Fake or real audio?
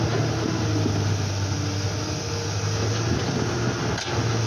real